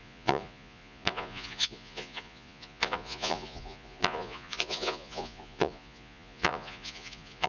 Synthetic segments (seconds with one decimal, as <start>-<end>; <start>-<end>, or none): 0.0-7.5